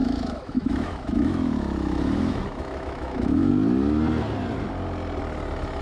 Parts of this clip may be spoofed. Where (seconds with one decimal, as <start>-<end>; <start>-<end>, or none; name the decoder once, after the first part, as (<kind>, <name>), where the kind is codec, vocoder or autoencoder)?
0.0-3.5 (autoencoder, DAC-VAE)

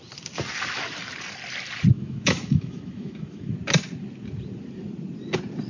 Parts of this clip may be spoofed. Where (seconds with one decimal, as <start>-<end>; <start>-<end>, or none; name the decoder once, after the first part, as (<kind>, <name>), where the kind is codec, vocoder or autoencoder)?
1.9-3.5 (autoencoder, DAC-VAE)

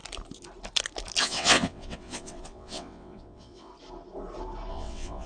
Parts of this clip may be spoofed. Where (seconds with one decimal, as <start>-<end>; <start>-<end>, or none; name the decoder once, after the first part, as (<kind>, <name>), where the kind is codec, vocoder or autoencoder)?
1.2-3.7 (vocoder, WaveNeXt); 4.7-5.3

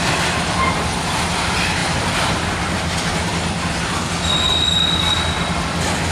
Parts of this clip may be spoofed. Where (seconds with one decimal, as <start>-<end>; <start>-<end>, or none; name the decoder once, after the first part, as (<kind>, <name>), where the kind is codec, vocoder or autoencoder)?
1.8-2.8 (vocoder, BigVGAN v2)

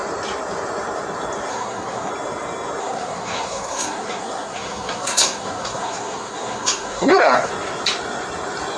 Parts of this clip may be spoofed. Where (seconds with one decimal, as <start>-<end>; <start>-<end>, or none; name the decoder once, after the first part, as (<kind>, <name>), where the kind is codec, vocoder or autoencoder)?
1.5-2.1 (codec, SNAC); 2.8-7.5

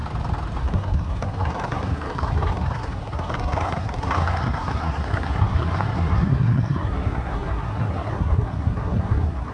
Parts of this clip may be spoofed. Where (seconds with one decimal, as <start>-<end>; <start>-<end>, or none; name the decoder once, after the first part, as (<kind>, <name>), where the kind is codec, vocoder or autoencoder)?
0.6-9.5 (codec, SNAC)

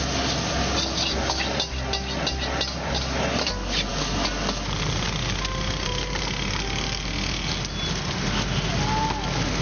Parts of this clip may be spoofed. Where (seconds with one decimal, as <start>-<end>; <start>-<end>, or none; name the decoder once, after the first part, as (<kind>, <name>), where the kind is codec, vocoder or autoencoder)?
none